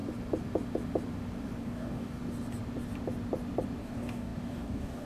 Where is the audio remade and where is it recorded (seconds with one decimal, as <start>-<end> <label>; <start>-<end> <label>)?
0.0-1.6 recorded; 1.6-2.2 remade; 2.2-3.8 recorded; 3.8-5.1 remade